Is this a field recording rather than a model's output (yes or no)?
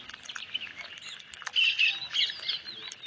yes